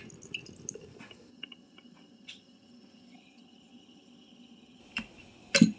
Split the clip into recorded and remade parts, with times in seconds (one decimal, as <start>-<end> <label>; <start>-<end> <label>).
0.0-1.3 recorded; 1.3-4.8 remade; 4.8-5.8 recorded